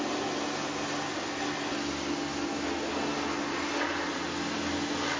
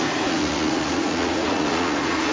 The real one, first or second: first